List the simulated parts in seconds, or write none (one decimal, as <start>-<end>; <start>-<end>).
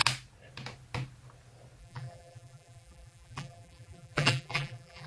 1.8-5.1